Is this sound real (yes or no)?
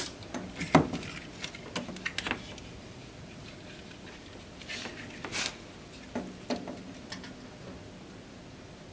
yes